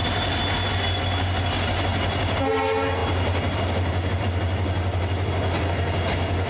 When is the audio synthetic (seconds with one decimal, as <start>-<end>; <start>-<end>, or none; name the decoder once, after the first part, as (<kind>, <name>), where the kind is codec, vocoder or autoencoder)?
none

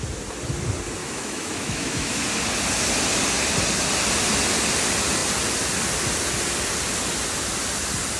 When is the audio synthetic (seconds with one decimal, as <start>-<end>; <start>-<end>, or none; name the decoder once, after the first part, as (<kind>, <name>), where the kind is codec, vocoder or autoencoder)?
1.0-2.2 (autoencoder, DAC-VAE)

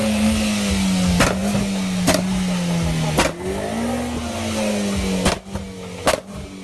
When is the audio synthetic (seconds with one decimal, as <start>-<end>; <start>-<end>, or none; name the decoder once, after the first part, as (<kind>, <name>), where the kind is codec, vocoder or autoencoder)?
none

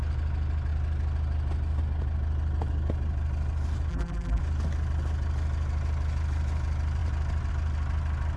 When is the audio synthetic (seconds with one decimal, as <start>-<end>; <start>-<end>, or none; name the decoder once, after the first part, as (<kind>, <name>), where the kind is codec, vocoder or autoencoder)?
3.9-4.4 (vocoder, BigVGAN v2)